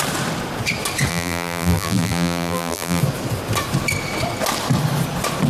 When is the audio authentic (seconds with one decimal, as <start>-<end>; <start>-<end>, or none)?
0.0-1.1; 3.0-5.5